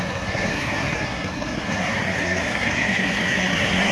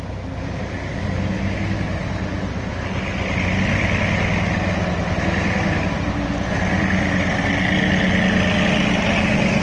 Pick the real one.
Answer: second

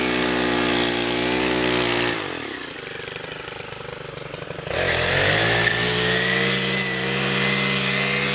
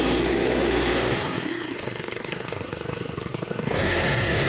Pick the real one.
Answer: first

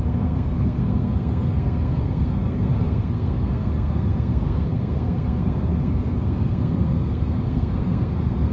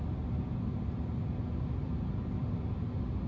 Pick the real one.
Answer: second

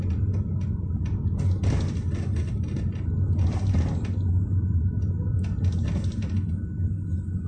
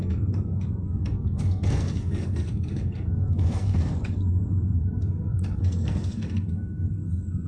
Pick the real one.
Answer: first